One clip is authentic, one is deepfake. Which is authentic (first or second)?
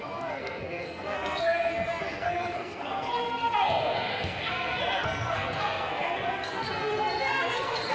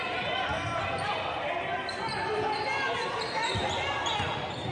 second